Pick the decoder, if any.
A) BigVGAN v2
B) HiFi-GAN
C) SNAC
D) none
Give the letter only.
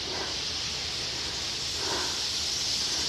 A